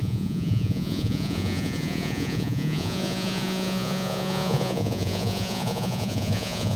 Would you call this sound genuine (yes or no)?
no